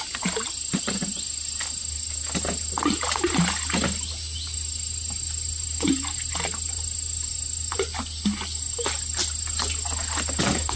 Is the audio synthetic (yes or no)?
no